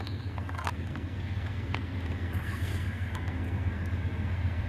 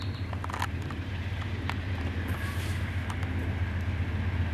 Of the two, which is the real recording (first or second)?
second